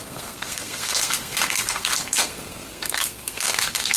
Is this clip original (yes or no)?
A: no